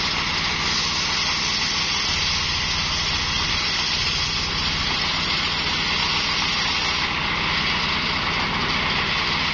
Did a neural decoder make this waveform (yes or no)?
no